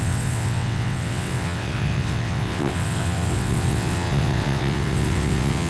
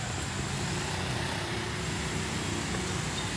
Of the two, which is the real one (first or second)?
second